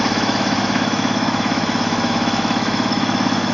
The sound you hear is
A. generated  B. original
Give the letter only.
A